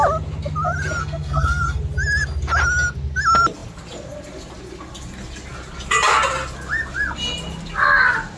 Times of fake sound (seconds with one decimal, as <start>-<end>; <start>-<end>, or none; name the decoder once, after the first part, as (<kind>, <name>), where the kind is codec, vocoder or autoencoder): 1.0-1.8 (codec, SNAC)